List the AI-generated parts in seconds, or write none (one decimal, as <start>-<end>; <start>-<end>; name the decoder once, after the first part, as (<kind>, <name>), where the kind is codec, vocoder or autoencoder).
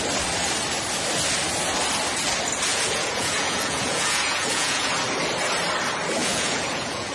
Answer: 2.7-4.9 (vocoder, Vocos); 6.2-7.1